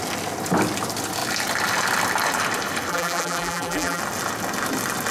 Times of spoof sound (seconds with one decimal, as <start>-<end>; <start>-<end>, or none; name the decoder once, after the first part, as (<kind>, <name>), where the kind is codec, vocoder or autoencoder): 2.9-4.0 (vocoder, BigVGAN v2)